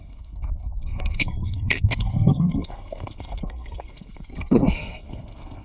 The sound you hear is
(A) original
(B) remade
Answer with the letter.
B